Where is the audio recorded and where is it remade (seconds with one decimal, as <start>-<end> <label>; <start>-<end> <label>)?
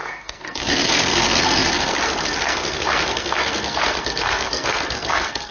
0.0-5.5 remade